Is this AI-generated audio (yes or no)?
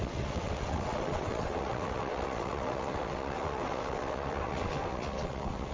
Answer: yes